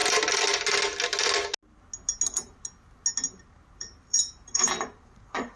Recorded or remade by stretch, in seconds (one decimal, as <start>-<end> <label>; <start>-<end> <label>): 0.0-3.4 recorded; 3.4-5.6 remade